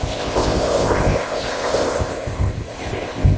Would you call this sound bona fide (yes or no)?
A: no